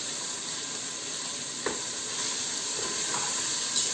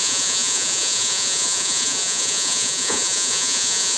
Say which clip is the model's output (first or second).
second